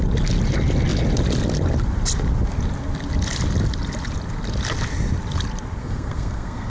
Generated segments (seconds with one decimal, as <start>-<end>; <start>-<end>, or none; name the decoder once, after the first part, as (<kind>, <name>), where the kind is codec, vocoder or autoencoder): 5.8-6.7 (codec, SNAC)